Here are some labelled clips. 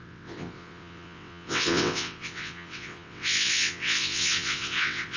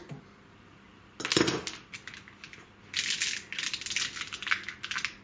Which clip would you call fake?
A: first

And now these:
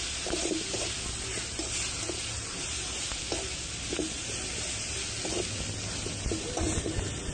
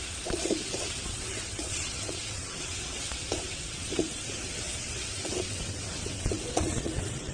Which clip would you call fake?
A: second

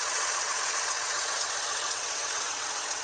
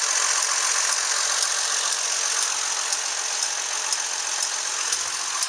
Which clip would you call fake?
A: first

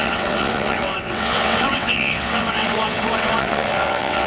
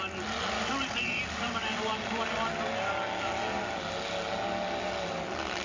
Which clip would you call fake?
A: first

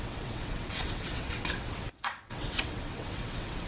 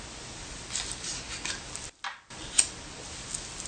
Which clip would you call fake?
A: first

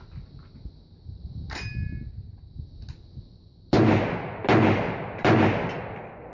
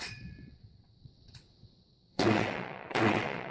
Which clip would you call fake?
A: second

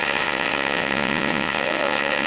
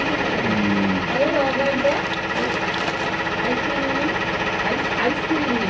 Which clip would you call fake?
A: first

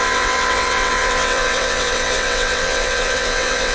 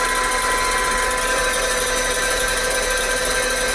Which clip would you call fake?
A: first